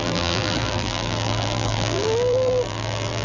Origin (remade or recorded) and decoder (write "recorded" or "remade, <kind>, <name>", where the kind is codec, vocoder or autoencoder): remade, vocoder, BigVGAN v2